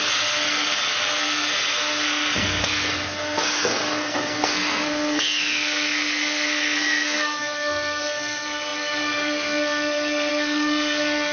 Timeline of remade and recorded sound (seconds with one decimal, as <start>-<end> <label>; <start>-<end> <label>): 0.0-11.3 remade